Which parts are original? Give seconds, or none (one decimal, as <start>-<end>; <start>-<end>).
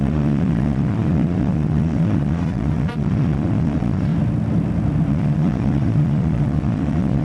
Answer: 4.1-5.1